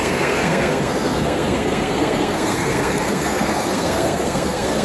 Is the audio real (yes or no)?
no